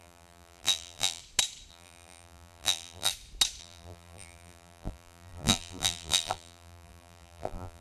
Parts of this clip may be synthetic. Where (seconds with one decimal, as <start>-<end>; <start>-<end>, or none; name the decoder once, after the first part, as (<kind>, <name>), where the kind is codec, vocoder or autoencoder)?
0.0-1.2 (vocoder, BigVGAN v2); 1.7-3.1; 3.6-7.8